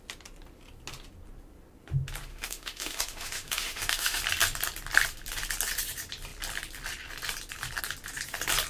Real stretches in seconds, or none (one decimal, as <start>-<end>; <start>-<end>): 0.0-2.3; 4.2-8.7